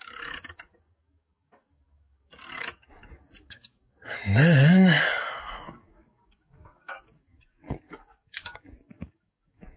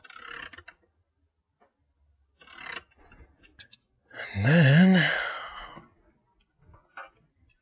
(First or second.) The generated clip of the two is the first